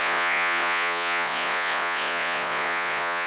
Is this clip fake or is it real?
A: fake